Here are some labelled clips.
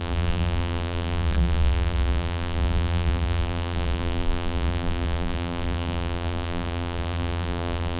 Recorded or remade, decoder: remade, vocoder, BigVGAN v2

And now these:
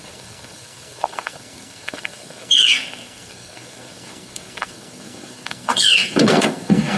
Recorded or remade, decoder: remade, codec, SNAC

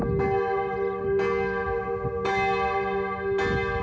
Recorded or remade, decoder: recorded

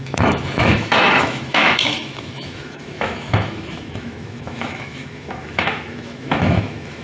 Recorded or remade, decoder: remade, autoencoder, DAC-VAE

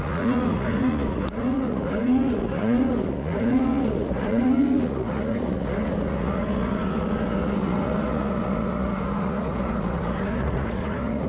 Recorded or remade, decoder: remade, vocoder, Vocos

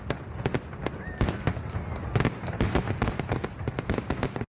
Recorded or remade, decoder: recorded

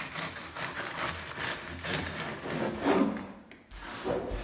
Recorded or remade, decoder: recorded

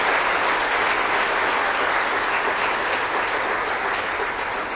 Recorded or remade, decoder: recorded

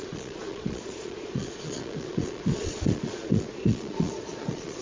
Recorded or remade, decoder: remade, vocoder, Vocos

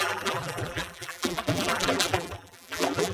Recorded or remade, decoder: remade, vocoder, BigVGAN v2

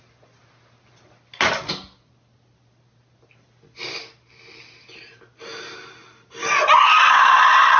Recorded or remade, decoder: recorded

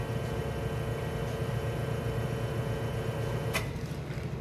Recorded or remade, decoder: recorded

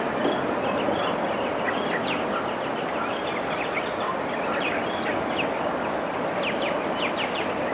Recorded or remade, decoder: recorded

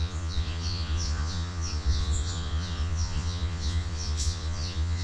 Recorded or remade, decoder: remade, vocoder, Vocos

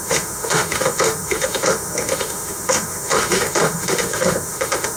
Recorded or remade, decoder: remade, autoencoder, DAC-VAE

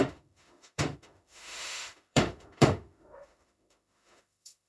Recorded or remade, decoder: remade, autoencoder, DAC-VAE